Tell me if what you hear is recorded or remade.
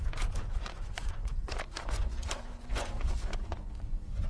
remade